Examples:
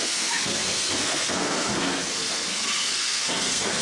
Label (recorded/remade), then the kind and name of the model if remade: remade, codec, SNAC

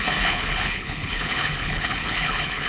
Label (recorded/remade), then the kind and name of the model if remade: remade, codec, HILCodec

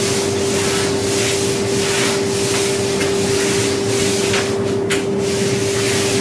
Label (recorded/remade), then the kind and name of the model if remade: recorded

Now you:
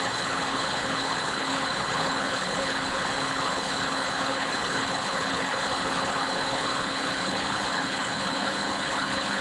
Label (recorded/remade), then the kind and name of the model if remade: remade, codec, HILCodec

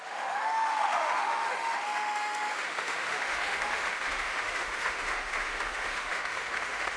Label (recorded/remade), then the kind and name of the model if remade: remade, autoencoder, DAC-VAE